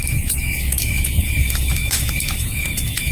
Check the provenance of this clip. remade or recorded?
remade